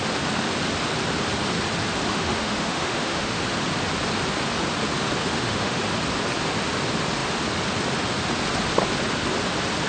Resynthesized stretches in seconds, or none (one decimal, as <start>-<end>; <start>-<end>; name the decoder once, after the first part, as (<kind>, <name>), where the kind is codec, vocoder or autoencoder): 2.1-3.4 (autoencoder, DAC-VAE); 5.2-5.8